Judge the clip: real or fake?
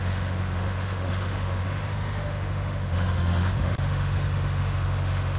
fake